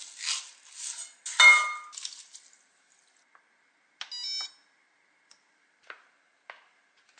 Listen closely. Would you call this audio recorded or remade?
recorded